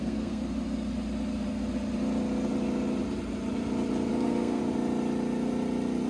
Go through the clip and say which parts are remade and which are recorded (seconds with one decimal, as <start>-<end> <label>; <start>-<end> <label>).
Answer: 0.0-0.4 remade; 0.4-4.1 recorded; 4.1-4.6 remade; 4.6-6.1 recorded